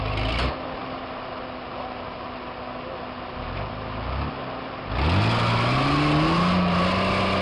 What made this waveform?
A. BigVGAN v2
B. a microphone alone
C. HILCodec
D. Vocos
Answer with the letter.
B